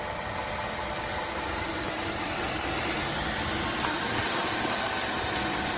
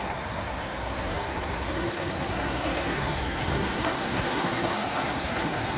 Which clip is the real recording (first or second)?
first